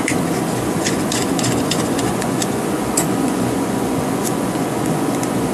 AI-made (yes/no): yes